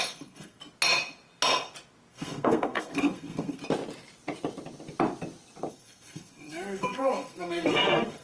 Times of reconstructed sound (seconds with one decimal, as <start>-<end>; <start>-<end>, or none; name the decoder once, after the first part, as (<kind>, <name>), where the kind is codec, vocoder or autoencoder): 0.0-0.6 (codec, SNAC); 2.1-3.6; 5.7-8.2